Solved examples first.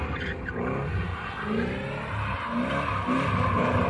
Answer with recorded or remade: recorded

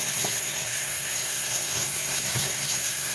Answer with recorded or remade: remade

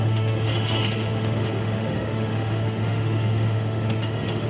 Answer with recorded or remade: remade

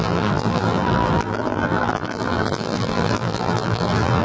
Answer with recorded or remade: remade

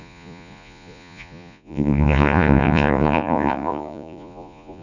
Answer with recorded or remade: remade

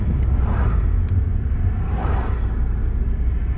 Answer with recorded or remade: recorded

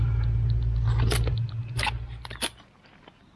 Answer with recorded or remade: recorded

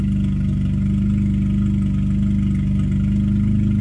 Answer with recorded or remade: recorded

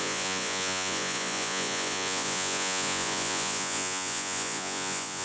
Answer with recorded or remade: remade